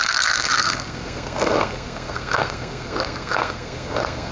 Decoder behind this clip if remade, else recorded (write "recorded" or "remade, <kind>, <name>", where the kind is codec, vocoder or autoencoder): remade, codec, SNAC